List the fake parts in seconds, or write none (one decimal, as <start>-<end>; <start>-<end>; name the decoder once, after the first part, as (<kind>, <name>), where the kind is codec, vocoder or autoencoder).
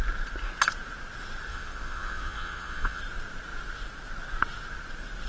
1.5-3.0 (vocoder, Vocos)